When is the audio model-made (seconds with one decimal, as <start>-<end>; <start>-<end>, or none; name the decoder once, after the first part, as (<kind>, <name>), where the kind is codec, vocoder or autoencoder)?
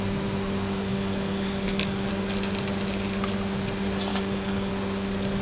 0.9-2.1 (codec, DAC); 4.1-4.7